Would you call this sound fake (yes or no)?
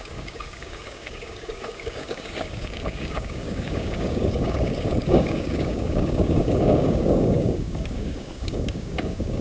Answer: yes